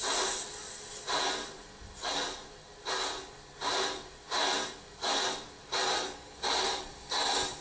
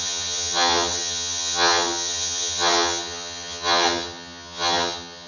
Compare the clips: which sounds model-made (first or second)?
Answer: second